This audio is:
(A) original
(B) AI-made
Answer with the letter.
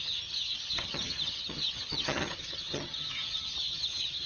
B